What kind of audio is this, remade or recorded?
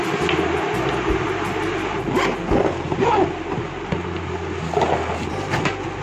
recorded